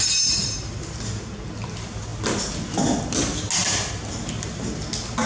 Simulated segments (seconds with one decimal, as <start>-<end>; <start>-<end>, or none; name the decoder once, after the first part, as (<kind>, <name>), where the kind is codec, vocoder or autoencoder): none